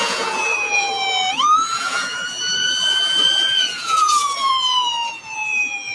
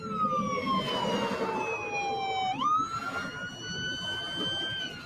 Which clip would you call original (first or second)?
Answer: second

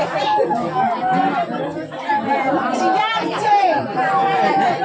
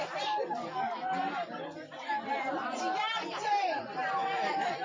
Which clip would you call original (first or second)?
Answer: first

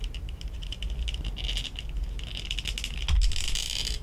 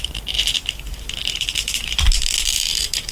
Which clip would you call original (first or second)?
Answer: first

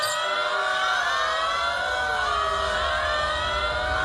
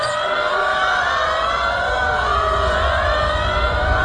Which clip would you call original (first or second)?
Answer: first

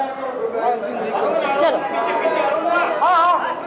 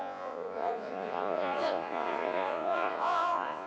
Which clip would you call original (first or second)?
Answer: first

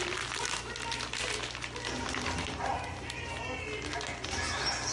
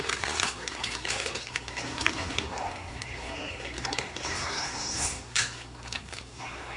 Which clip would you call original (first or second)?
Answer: first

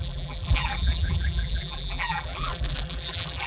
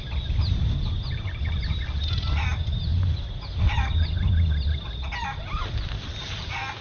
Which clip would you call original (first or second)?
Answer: second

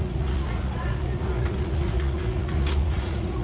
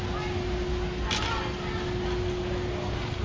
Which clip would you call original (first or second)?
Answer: second